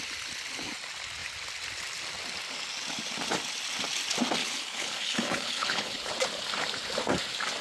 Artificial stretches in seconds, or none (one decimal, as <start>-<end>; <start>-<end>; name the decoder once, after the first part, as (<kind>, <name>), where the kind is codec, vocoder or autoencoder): 4.4-6.1 (codec, HILCodec)